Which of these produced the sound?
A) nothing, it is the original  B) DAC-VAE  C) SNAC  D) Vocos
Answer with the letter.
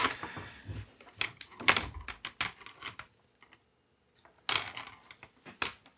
A